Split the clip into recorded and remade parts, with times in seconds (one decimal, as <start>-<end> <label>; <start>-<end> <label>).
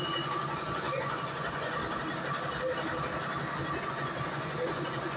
0.0-1.8 remade; 1.8-3.9 recorded; 3.9-5.2 remade